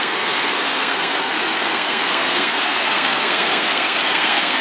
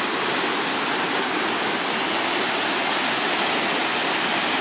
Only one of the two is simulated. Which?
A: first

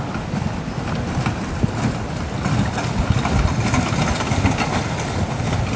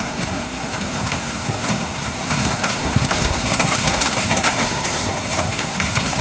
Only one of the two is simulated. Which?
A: second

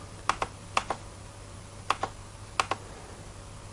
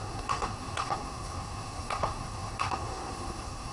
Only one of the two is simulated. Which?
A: second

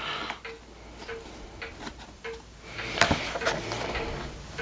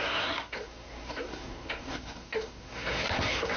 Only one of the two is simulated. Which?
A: second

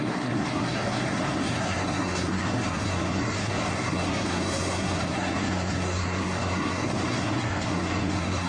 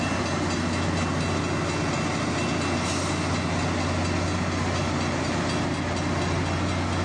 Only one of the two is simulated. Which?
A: first